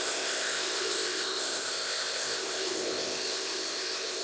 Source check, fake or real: fake